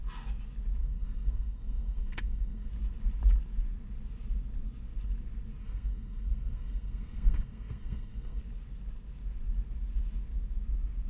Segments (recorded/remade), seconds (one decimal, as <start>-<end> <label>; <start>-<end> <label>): 0.0-0.8 recorded; 0.8-2.7 remade; 2.7-5.6 recorded; 5.6-8.4 remade; 8.4-11.1 recorded